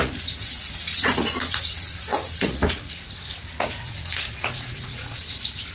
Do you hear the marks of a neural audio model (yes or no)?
yes